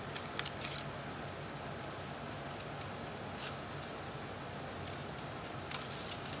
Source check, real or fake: real